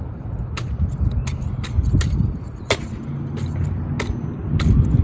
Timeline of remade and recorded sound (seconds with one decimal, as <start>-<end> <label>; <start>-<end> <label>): 0.0-3.0 remade; 3.0-4.2 recorded; 4.2-5.0 remade